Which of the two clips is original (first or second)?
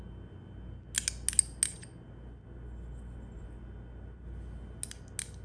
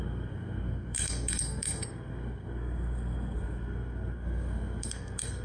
first